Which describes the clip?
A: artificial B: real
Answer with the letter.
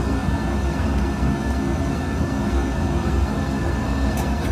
A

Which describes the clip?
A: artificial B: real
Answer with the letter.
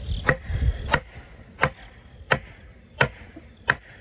B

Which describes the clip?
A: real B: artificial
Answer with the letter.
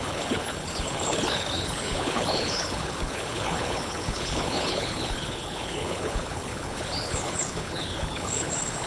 B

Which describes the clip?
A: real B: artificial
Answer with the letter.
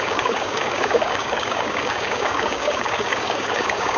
B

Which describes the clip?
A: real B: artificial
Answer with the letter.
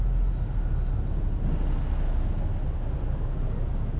A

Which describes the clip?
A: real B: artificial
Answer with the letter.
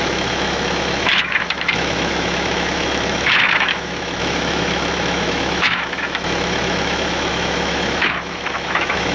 B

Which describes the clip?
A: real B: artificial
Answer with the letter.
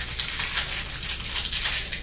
A